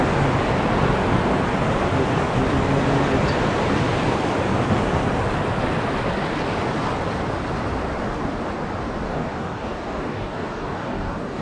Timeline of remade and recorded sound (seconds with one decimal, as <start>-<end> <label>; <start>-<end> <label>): 0.0-9.1 recorded; 9.1-11.4 remade